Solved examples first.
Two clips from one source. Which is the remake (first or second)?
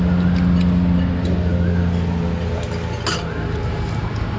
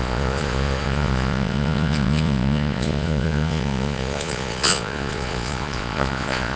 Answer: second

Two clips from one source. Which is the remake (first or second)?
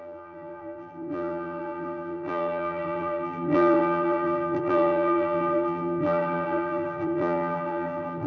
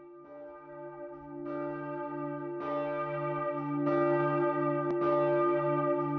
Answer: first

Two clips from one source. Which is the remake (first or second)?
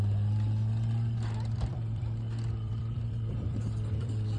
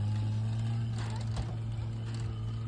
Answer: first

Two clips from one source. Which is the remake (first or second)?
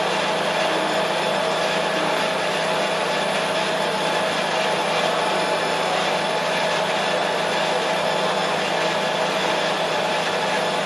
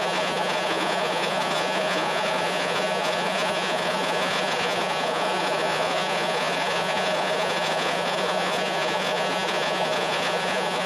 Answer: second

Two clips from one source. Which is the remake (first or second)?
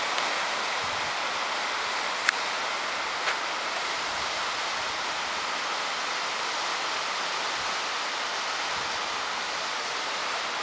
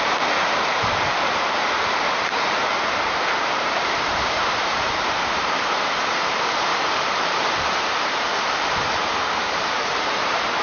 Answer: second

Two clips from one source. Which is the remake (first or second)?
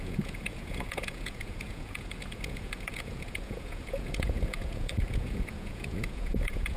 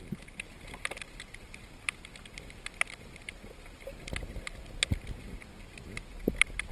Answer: first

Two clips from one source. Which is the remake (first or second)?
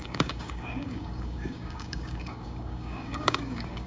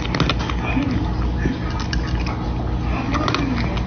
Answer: first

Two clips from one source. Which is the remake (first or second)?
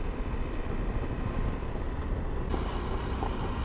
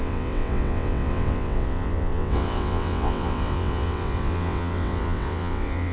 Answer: second